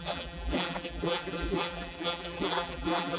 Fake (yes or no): yes